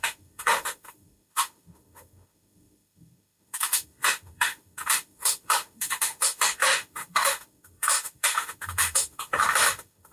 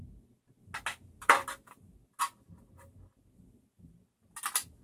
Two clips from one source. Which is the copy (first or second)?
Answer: first